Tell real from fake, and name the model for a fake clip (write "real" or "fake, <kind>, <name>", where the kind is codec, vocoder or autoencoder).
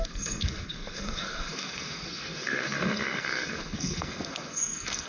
fake, codec, SNAC